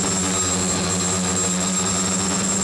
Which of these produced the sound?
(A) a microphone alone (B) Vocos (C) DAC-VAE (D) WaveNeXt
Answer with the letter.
A